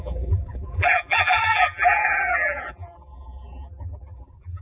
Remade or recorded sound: remade